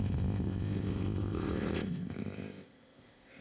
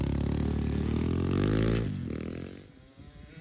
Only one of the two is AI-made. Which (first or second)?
first